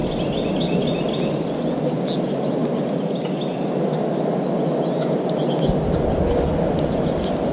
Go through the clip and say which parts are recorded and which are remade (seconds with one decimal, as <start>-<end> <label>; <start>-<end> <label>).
0.0-7.5 recorded